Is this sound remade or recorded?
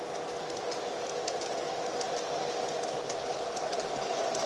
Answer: recorded